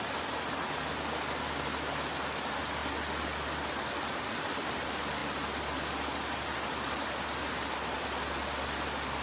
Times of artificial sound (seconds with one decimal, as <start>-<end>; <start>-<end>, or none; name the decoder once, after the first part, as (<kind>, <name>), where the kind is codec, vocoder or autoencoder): none